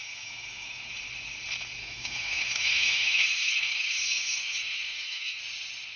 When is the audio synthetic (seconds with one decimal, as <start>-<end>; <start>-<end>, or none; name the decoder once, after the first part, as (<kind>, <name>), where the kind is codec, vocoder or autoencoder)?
0.0-0.9 (autoencoder, DAC-VAE); 1.8-5.4